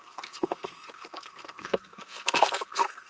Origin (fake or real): fake